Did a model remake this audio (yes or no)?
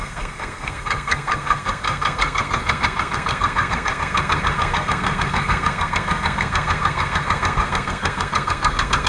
yes